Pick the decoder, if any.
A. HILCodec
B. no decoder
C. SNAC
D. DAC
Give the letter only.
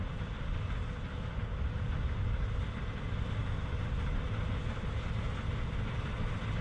B